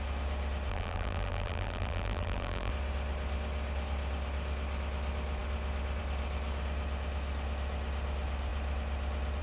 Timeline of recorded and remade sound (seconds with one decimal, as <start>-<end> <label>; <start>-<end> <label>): 0.0-0.7 recorded; 0.7-2.7 remade; 2.7-9.4 recorded